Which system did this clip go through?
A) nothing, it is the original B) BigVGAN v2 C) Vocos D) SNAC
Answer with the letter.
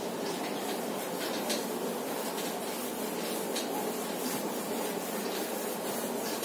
A